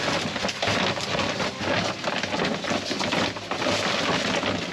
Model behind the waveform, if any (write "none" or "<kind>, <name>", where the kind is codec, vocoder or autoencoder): none